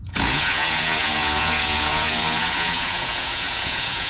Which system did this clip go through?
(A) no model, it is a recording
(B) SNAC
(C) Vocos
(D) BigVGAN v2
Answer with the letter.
C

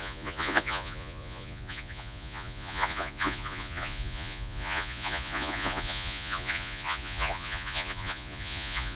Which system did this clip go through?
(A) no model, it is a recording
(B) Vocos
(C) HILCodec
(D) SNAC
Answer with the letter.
B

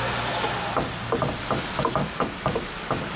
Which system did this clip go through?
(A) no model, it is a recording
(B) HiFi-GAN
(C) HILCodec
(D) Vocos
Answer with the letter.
A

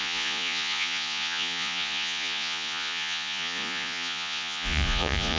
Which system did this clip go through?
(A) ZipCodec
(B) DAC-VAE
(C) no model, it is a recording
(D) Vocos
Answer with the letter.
D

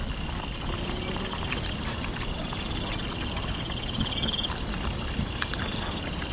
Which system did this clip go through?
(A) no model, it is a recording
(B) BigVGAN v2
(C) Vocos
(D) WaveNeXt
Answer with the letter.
A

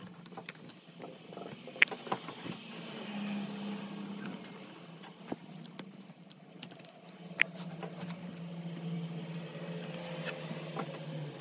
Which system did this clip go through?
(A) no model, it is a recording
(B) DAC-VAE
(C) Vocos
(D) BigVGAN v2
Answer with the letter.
A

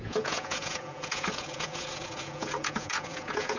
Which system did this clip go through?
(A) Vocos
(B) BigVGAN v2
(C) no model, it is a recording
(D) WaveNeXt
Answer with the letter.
A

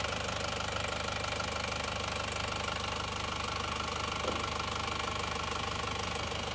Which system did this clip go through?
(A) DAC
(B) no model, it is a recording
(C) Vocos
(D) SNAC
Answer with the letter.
B